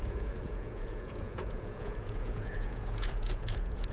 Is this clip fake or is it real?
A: fake